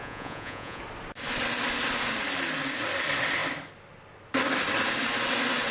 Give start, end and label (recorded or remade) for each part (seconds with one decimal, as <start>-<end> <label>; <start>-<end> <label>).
0.0-0.8 remade; 0.8-5.7 recorded